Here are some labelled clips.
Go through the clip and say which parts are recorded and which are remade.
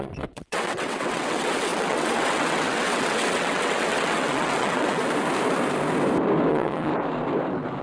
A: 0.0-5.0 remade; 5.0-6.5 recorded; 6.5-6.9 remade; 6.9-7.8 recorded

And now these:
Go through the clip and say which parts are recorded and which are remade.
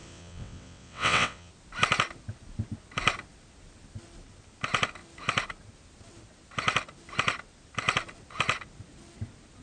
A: 0.0-1.5 remade; 1.5-9.6 recorded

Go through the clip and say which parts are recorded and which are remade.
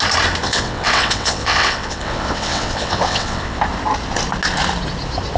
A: 0.0-0.4 recorded; 0.4-3.6 remade; 3.6-5.4 recorded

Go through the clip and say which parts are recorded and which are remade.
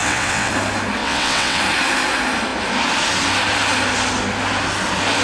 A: 0.0-0.5 remade; 0.5-1.0 recorded; 1.0-1.6 remade; 1.6-5.2 recorded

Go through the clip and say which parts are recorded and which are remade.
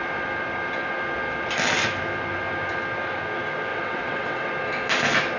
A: 0.0-3.7 recorded; 3.7-4.5 remade; 4.5-5.4 recorded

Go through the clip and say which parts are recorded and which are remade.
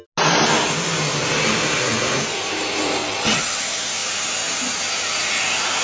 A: 0.0-3.0 recorded; 3.0-3.6 remade; 3.6-5.8 recorded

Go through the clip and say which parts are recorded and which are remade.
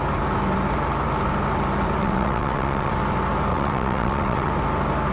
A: 0.0-2.0 recorded; 2.0-2.9 remade; 2.9-3.5 recorded; 3.5-4.5 remade; 4.5-5.1 recorded